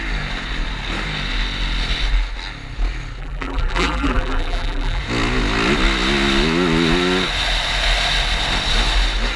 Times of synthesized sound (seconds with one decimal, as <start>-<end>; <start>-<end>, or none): 3.2-5.0